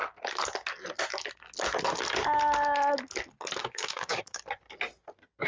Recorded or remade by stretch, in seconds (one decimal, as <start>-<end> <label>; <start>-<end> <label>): 0.0-3.6 recorded; 3.6-4.4 remade; 4.4-5.5 recorded